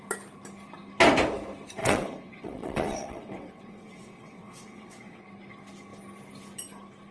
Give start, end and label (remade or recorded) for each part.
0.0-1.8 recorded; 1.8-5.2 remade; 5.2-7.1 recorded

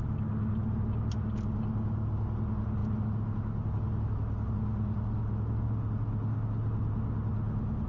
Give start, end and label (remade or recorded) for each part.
0.0-7.9 recorded

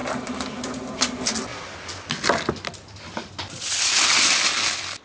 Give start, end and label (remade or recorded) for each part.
0.0-5.0 recorded

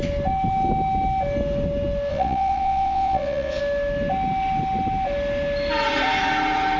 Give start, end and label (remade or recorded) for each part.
0.0-2.1 recorded; 2.1-3.6 remade; 3.6-6.8 recorded

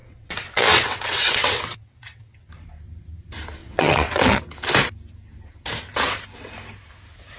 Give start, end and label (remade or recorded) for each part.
0.0-2.5 remade; 2.5-3.6 recorded; 3.6-4.4 remade; 4.4-7.4 recorded

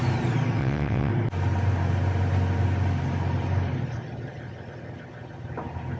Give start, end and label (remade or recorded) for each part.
0.0-0.6 recorded; 0.6-1.1 remade; 1.1-6.0 recorded

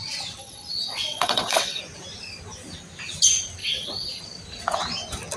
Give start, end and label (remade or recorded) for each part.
0.0-0.4 recorded; 0.4-1.8 remade; 1.8-3.6 recorded; 3.6-4.2 remade; 4.2-5.4 recorded